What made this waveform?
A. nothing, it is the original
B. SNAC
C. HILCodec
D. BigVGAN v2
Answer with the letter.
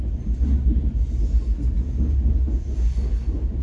A